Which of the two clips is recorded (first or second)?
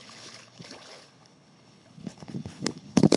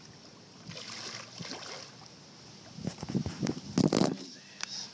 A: second